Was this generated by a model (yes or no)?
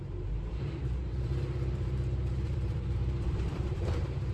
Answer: yes